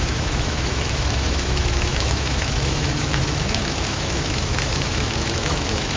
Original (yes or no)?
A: no